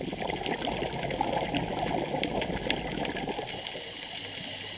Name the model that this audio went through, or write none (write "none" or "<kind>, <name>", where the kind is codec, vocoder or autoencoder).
none